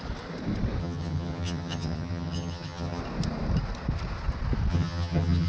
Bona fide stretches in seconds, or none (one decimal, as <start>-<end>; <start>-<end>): 0.0-0.8; 3.0-4.7